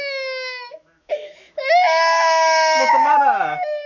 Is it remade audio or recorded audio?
remade